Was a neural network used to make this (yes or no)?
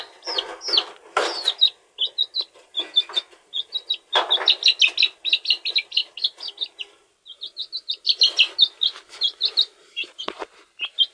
no